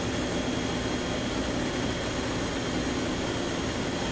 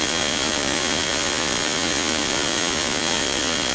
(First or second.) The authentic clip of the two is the first